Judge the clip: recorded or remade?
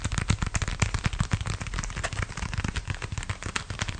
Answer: recorded